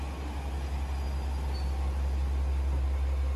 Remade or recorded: recorded